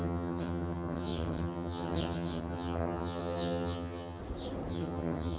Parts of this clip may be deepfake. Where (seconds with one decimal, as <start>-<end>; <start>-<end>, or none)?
0.0-4.2; 4.7-5.4